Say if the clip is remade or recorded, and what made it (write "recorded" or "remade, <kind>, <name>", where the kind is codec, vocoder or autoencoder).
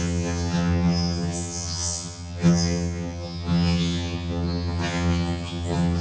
remade, vocoder, HiFi-GAN